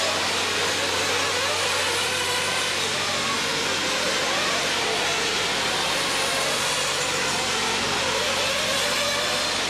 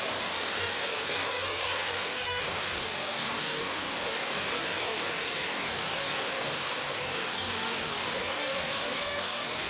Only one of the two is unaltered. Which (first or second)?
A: first